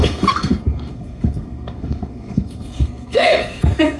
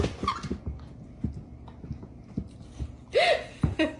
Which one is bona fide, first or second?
second